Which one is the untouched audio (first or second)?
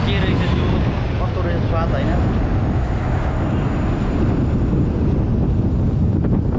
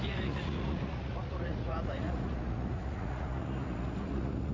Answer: first